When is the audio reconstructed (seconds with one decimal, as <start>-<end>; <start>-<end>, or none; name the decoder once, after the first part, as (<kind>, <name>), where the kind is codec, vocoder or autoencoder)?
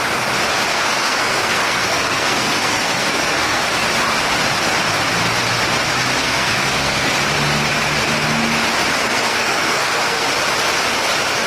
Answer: 0.7-3.6 (codec, SNAC); 6.2-7.1; 9.0-10.3